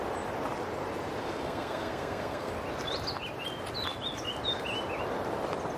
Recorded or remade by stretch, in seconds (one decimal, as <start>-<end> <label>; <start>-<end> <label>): 0.0-1.2 recorded; 1.2-2.5 remade; 2.5-5.8 recorded